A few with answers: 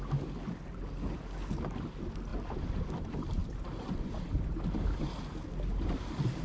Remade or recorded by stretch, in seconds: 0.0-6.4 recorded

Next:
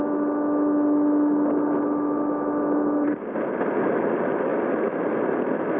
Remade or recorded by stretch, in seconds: 0.0-5.8 recorded

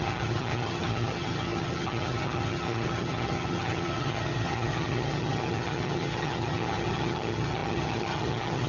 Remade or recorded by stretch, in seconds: 0.0-8.7 remade

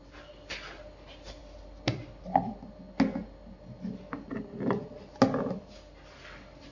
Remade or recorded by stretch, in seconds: 0.0-6.7 recorded